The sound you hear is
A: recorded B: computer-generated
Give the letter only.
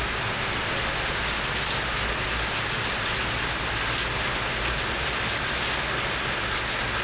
A